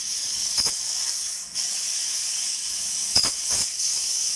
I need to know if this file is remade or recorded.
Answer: remade